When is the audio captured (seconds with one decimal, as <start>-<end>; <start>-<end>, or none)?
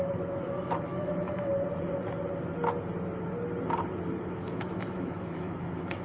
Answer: 1.5-4.3